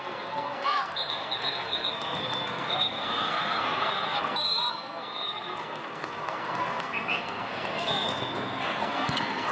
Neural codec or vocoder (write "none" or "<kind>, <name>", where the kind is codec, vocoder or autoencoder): codec, SNAC